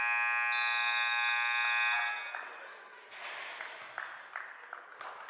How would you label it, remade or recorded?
recorded